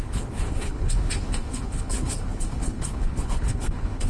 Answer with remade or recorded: remade